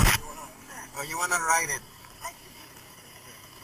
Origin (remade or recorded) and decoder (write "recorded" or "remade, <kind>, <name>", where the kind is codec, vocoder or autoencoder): remade, codec, DAC